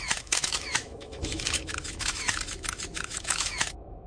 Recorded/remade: remade